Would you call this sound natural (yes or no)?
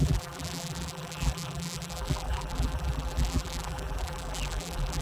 no